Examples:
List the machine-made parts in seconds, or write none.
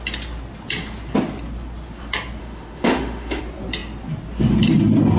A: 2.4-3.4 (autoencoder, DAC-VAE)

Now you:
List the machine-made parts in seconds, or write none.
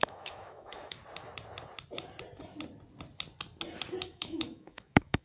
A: 0.0-1.0 (autoencoder, DAC-VAE); 4.1-5.2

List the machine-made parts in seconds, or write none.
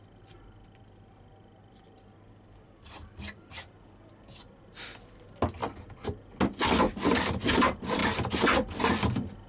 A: none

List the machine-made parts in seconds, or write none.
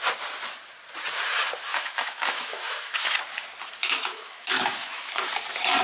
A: 1.7-3.2 (autoencoder, DAC-VAE); 3.8-5.3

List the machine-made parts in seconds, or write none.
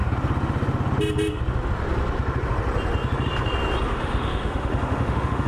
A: 3.9-5.5 (autoencoder, DAC-VAE)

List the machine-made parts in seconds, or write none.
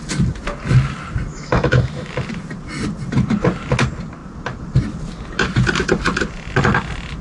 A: 1.3-2.1 (autoencoder, DAC-VAE)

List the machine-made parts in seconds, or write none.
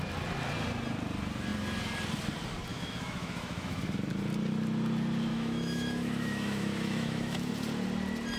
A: 2.7-3.8 (autoencoder, DAC-VAE); 5.3-7.5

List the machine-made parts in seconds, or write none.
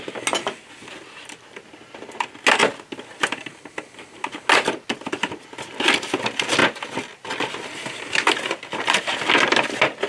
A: none